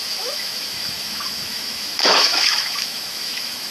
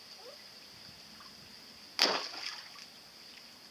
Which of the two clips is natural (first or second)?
second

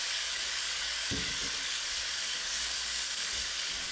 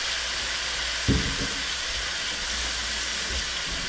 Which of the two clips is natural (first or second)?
second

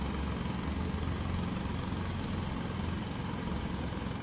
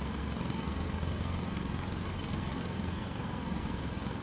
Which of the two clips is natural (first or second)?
first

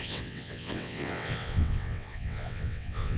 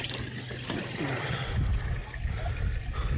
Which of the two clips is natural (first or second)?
second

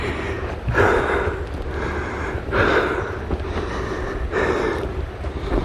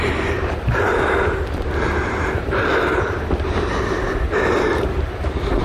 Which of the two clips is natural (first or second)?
first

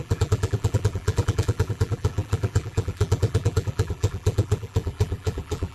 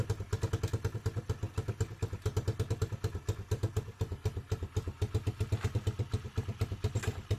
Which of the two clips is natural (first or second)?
second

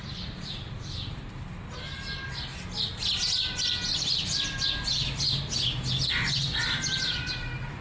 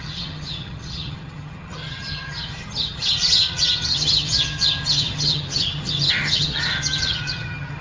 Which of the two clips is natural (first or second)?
first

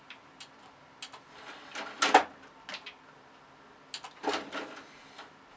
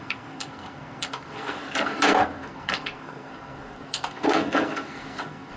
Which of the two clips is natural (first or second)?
first